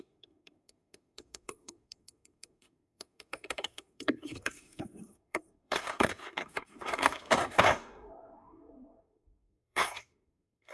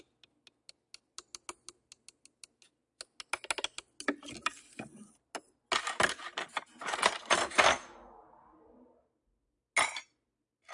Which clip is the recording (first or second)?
second